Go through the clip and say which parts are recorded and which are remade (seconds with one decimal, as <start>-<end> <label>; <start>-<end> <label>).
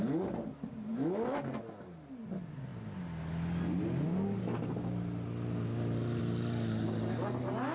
0.0-7.7 recorded